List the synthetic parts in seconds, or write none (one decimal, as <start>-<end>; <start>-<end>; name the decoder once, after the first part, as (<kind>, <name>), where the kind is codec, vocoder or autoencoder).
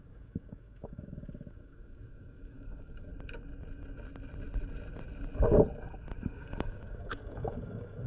0.0-3.1 (codec, DAC); 6.2-8.1